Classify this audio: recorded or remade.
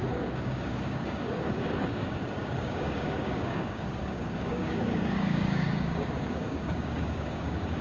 remade